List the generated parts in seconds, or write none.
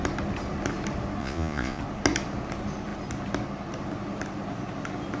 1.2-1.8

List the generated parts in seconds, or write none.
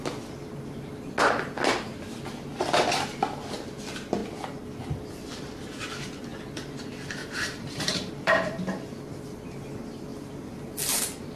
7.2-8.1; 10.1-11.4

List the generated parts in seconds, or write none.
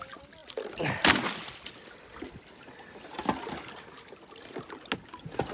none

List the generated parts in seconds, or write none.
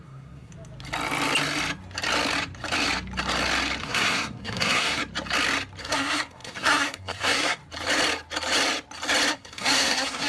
0.0-0.5; 3.8-5.0; 5.8-7.6; 9.3-10.3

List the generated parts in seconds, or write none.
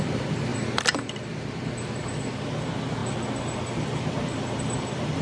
0.0-3.0; 3.8-5.2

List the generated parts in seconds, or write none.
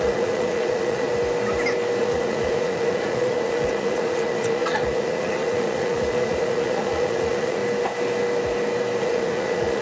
0.0-1.1; 2.0-7.6; 9.0-9.8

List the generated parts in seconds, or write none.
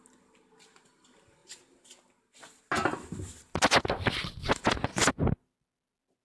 none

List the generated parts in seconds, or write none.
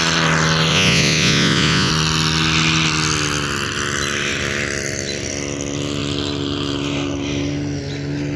0.7-1.9